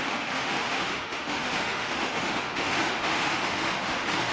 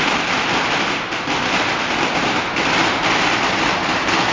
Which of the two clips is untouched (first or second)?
second